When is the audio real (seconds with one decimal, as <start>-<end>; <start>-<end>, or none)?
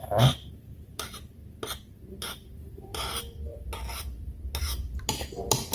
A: 1.4-2.2